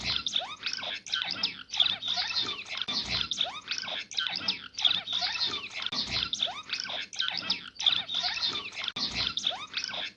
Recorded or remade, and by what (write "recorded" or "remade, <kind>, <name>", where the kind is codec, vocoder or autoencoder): recorded